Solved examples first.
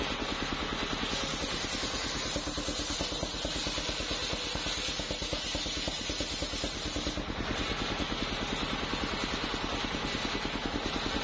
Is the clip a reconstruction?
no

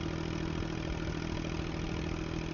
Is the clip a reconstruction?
no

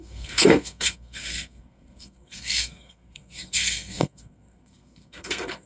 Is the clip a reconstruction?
yes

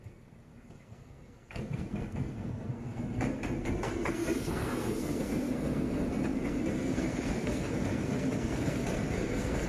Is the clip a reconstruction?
yes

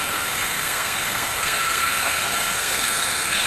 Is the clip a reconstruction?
yes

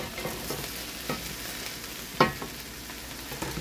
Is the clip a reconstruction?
no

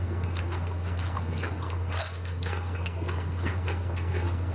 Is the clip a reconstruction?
yes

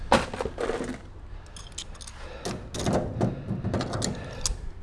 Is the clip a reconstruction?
no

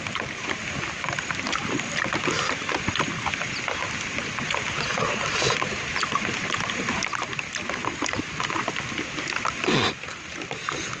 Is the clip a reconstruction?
no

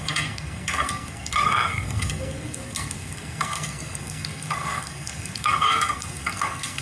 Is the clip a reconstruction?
yes